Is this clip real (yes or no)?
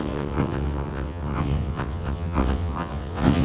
no